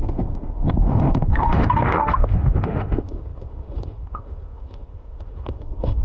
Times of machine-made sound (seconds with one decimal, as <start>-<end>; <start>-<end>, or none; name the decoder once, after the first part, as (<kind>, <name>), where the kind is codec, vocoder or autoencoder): 0.0-6.0 (autoencoder, DAC-VAE)